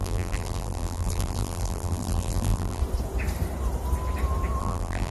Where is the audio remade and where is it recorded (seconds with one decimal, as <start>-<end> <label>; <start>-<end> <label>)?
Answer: 0.0-2.8 remade; 2.8-4.6 recorded; 4.6-5.1 remade